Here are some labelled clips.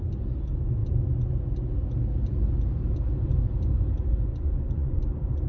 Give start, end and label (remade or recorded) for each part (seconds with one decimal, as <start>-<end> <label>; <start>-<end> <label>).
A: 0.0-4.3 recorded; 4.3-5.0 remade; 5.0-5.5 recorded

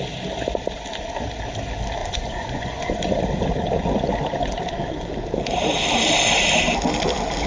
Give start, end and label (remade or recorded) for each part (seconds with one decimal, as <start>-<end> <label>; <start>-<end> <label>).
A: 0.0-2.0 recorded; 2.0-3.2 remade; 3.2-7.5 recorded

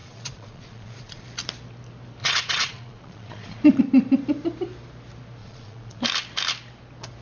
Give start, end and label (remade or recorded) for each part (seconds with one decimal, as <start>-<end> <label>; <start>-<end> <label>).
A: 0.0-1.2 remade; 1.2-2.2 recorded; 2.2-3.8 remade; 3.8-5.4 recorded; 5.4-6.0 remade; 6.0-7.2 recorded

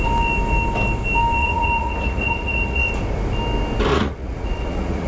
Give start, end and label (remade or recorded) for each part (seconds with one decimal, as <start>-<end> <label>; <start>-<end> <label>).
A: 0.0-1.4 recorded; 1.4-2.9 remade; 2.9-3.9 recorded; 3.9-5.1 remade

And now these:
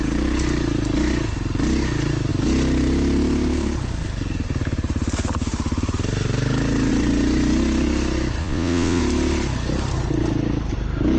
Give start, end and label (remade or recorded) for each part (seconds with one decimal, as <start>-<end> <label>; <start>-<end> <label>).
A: 0.0-8.4 recorded; 8.4-9.0 remade; 9.0-11.2 recorded